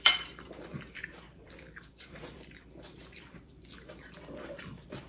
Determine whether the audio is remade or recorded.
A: remade